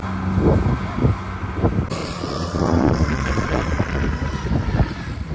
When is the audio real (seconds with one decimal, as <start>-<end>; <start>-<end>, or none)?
0.0-2.0; 4.0-5.3